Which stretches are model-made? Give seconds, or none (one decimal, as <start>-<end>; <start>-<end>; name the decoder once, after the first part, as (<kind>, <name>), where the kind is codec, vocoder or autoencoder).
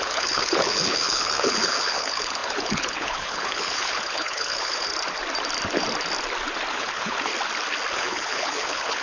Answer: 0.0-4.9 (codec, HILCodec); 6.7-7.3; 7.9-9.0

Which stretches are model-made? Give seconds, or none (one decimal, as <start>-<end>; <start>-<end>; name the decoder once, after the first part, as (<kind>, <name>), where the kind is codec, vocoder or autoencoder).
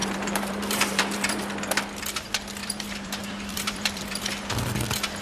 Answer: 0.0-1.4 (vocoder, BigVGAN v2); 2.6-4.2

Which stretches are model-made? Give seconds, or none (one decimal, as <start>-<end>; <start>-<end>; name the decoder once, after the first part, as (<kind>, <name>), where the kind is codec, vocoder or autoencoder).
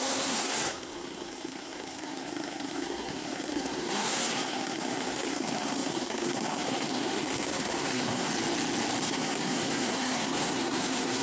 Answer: 0.0-8.3 (codec, SNAC); 9.0-11.2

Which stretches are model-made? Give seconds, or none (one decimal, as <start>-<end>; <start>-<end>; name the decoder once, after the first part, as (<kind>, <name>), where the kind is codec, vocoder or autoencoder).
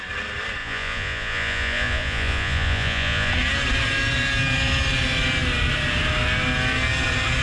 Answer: 0.6-3.3 (vocoder, Vocos)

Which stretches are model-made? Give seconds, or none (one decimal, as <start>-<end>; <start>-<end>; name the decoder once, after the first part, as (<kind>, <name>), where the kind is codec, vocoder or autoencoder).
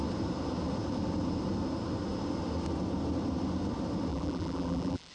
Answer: 4.1-5.1 (vocoder, BigVGAN v2)